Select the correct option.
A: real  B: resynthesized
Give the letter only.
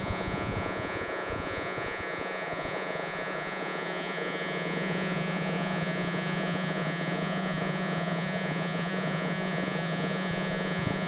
B